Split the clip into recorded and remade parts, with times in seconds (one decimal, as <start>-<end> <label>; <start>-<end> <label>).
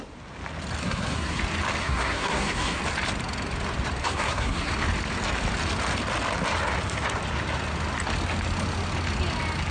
0.0-0.8 recorded; 0.8-1.4 remade; 1.4-1.8 recorded; 1.8-2.8 remade; 2.8-4.0 recorded; 4.0-4.7 remade; 4.7-9.7 recorded